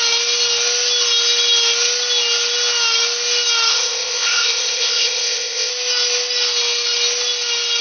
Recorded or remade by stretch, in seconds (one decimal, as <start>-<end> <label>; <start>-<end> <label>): 0.0-3.7 recorded; 3.7-5.7 remade; 5.7-7.8 recorded